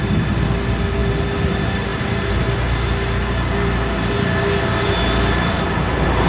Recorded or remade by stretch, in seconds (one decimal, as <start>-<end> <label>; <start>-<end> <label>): 0.0-6.3 recorded